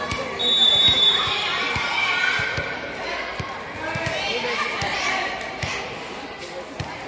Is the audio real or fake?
real